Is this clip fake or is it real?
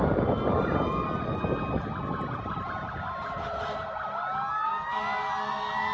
real